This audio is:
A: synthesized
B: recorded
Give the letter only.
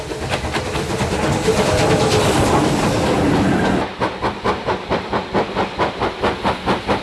B